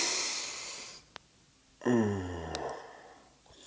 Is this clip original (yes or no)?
yes